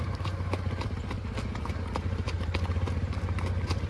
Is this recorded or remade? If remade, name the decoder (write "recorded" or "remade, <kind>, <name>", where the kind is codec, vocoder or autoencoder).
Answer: recorded